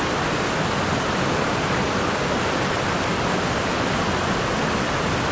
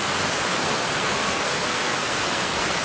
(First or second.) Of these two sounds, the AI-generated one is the second